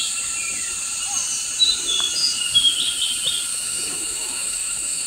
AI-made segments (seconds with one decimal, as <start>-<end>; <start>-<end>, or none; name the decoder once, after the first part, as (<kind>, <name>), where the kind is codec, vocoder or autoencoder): 3.5-5.1 (autoencoder, DAC-VAE)